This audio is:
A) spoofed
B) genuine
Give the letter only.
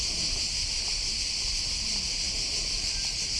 B